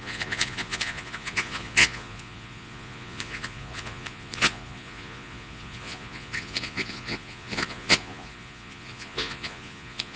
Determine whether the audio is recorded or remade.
remade